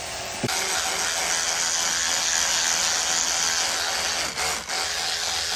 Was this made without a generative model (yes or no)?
yes